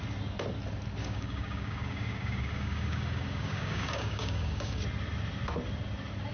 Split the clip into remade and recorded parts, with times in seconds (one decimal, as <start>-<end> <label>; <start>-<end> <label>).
0.0-1.0 recorded; 1.0-4.8 remade; 4.8-6.3 recorded